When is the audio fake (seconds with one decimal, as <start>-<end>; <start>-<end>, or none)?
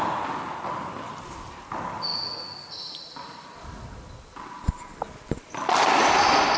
none